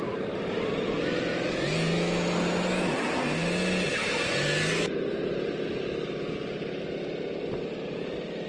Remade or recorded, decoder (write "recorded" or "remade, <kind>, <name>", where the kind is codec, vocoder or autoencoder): recorded